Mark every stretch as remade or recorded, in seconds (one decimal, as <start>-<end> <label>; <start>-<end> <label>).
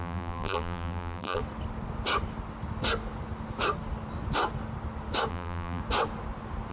0.0-1.4 remade; 1.4-5.3 recorded; 5.3-5.8 remade; 5.8-6.7 recorded